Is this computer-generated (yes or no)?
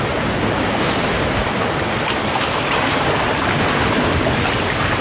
no